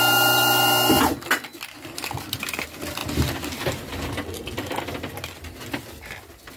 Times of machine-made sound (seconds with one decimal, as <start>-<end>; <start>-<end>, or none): none